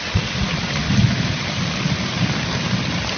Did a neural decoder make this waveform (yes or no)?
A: no